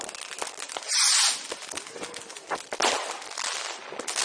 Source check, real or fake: real